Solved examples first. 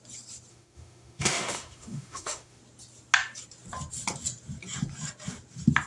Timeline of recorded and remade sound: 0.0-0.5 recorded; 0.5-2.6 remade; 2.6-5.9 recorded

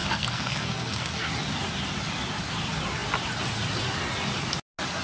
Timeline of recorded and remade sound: 0.0-1.3 remade; 1.3-5.0 recorded

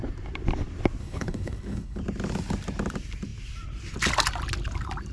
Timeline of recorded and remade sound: 0.0-1.0 recorded; 1.0-2.0 remade; 2.0-5.1 recorded

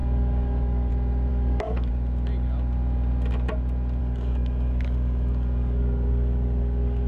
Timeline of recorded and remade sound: 0.0-0.9 remade; 0.9-1.3 recorded; 1.3-1.9 remade; 1.9-4.0 recorded; 4.0-7.1 remade

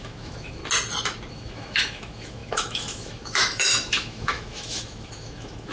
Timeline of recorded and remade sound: 0.0-0.6 remade; 0.6-1.3 recorded; 1.3-5.7 remade

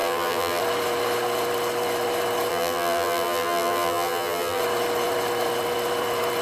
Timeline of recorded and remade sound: 0.0-0.6 remade; 0.6-2.5 recorded; 2.5-4.6 remade; 4.6-6.4 recorded

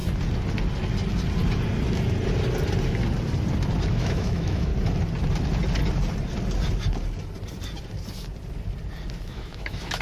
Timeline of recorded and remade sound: 0.0-3.9 recorded; 3.9-4.7 remade; 4.7-9.2 recorded; 9.2-10.0 remade